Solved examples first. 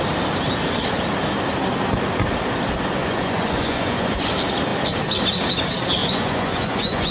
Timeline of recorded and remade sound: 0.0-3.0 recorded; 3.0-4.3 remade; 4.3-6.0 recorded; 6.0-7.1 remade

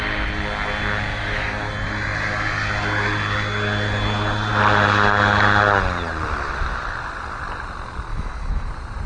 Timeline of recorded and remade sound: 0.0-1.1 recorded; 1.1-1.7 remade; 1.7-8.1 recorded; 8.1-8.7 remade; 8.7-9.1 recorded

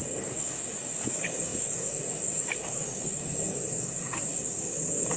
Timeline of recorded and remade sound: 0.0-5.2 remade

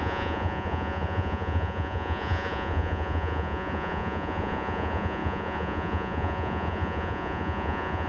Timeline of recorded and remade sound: 0.0-8.1 remade

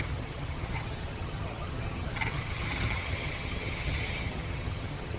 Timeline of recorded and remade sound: 0.0-5.2 remade